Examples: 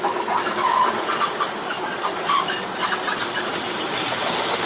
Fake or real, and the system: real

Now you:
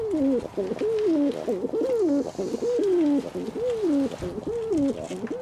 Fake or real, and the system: real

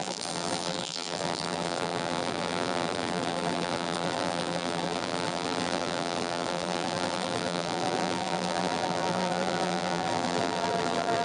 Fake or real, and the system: fake, vocoder, BigVGAN v2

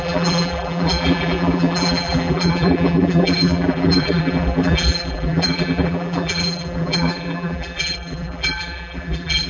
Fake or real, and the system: fake, vocoder, BigVGAN v2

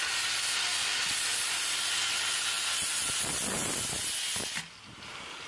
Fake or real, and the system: real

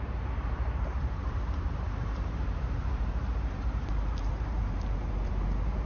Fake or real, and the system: fake, vocoder, BigVGAN v2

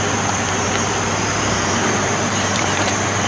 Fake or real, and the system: fake, vocoder, BigVGAN v2